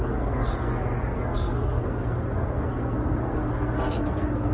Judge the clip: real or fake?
fake